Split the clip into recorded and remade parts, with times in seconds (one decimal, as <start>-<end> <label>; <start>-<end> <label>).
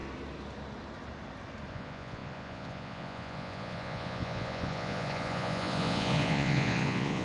0.0-1.7 recorded; 1.7-7.2 remade